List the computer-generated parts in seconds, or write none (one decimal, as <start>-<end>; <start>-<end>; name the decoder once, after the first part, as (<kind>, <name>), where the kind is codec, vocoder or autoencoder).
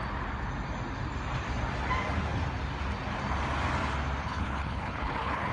4.2-5.5 (codec, HILCodec)